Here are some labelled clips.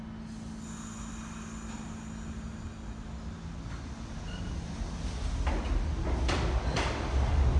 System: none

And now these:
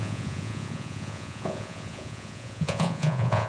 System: vocoder, Vocos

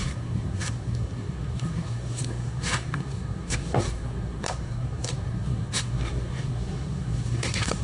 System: codec, SNAC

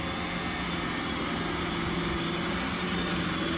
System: none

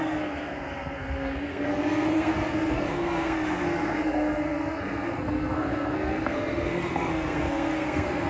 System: codec, SNAC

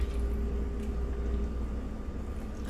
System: none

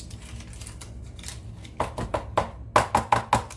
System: none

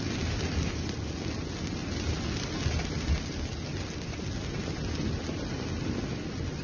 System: none